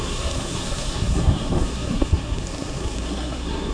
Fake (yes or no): yes